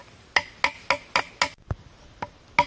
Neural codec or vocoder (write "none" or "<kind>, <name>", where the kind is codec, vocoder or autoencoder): none